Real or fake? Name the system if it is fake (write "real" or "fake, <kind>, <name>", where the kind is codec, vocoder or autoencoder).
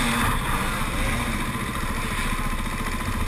real